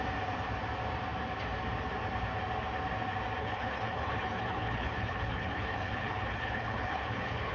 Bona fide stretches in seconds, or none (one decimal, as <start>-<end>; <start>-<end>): 0.0-3.4